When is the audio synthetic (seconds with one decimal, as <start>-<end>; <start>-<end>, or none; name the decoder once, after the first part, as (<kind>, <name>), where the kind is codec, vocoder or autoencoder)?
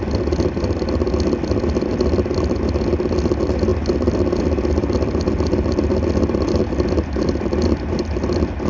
none